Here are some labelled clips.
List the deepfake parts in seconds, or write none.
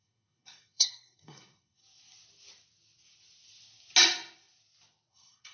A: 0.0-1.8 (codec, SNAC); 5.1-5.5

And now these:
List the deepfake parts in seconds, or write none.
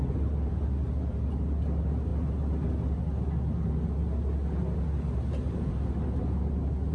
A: none